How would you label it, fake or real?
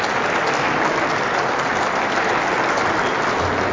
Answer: real